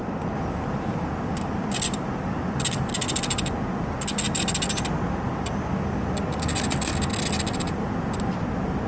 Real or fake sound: real